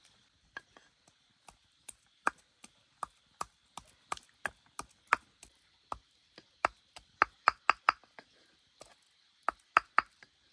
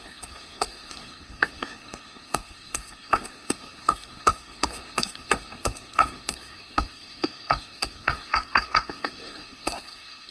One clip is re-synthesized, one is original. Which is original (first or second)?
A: first